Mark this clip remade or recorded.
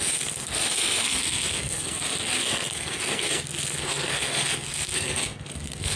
remade